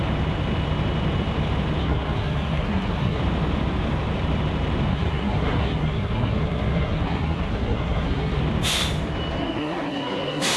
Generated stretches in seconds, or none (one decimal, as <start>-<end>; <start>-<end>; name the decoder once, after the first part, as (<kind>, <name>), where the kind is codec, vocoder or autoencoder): 1.8-3.2 (codec, SNAC); 4.9-8.4; 9.4-10.6